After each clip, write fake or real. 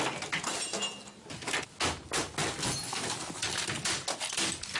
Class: real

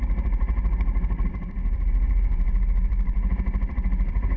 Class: fake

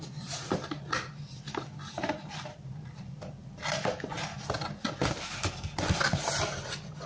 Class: real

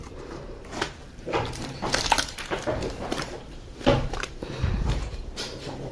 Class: fake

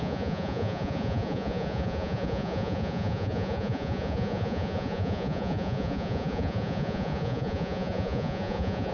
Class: fake